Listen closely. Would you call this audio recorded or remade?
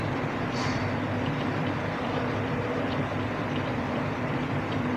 remade